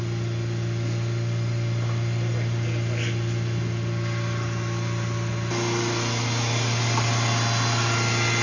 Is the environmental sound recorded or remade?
recorded